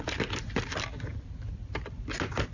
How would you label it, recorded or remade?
recorded